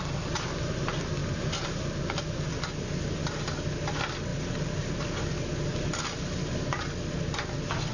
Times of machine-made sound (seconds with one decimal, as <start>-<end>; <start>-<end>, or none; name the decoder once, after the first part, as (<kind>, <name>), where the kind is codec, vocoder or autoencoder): none